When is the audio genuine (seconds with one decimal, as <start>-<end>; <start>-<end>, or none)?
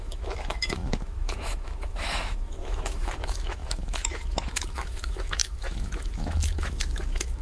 none